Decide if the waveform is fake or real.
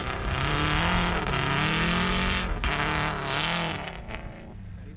real